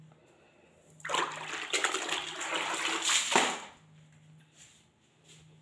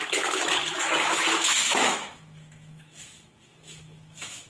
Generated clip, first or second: second